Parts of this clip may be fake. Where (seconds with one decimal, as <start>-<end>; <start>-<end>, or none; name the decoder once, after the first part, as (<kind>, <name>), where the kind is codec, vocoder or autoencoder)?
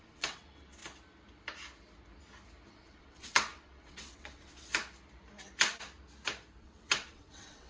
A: 0.0-0.8 (vocoder, WaveNeXt); 2.7-4.7; 6.6-7.7